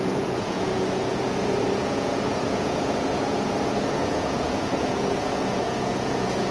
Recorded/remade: remade